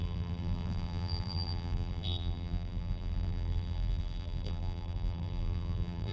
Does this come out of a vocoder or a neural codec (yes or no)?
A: yes